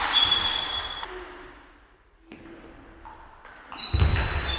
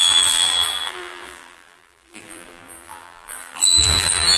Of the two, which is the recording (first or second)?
first